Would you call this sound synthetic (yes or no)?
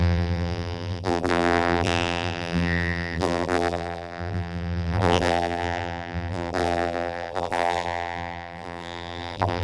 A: yes